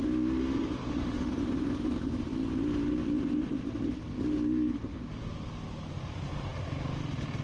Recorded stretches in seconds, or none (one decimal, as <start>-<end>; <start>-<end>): 0.0-0.8; 1.3-7.4